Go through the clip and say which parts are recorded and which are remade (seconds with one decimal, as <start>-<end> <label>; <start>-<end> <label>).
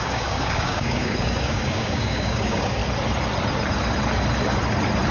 0.0-2.8 remade; 2.8-5.1 recorded